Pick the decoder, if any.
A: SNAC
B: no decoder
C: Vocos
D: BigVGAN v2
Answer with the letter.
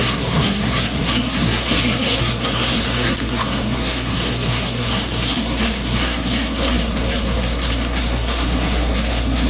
A